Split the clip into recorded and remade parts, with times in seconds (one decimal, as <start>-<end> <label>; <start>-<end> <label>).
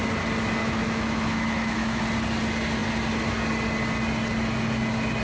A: 0.0-0.6 recorded; 0.6-2.0 remade; 2.0-5.2 recorded